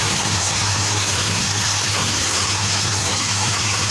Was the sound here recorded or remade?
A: remade